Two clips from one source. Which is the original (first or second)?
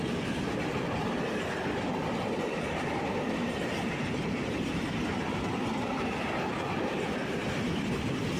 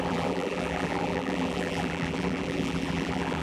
first